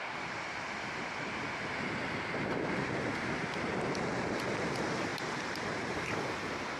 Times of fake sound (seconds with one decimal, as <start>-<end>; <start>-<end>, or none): 5.1-6.2